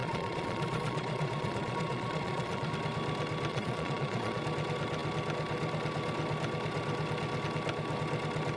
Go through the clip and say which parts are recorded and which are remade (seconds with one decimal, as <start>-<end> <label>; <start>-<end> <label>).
0.0-2.7 remade; 2.7-3.5 recorded; 3.5-4.4 remade; 4.4-8.6 recorded